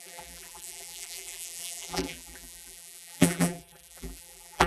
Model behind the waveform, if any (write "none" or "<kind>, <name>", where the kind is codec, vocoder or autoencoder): vocoder, BigVGAN v2